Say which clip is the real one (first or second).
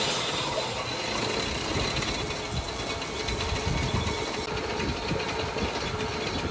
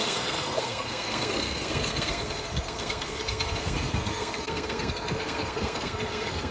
first